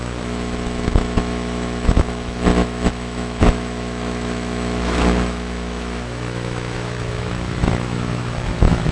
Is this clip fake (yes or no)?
yes